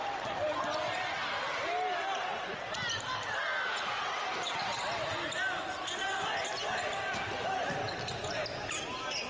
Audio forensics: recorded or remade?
recorded